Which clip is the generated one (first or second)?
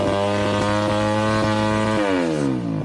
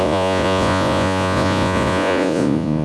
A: second